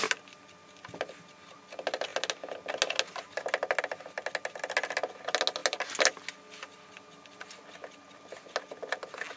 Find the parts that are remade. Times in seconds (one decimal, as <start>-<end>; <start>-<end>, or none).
none

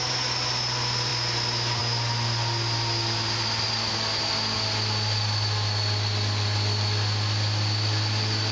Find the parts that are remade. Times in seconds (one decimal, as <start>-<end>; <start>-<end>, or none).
none

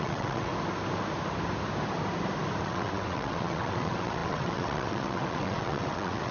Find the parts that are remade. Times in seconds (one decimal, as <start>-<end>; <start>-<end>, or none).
0.0-0.5; 2.6-6.3

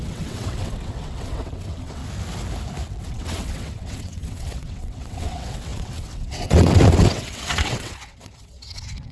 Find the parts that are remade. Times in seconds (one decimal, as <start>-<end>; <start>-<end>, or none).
0.0-2.0; 3.0-9.1

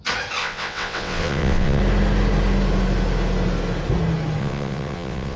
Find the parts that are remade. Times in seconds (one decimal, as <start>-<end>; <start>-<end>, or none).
0.4-1.8; 4.4-5.4

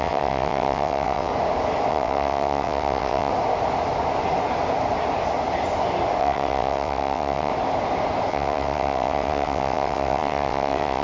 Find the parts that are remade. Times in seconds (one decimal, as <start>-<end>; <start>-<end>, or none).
0.0-1.3; 1.9-3.3; 6.2-7.5; 8.3-11.0

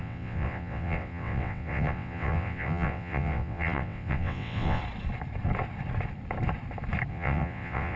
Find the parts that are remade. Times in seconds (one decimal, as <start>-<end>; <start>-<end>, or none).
0.0-4.8; 7.1-8.0

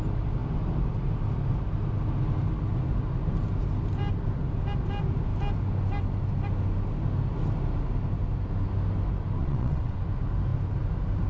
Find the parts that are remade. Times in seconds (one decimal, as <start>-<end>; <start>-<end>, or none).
9.4-10.0